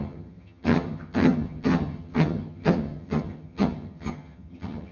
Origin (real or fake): fake